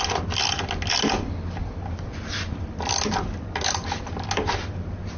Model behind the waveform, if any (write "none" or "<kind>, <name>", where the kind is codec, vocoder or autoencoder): none